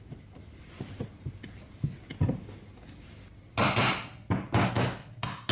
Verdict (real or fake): real